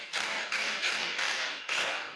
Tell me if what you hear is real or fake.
fake